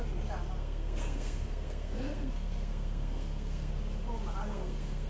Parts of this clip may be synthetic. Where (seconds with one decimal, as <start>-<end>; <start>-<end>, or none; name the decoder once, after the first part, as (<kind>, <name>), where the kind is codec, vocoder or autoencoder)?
0.6-3.7 (codec, SNAC); 4.4-5.1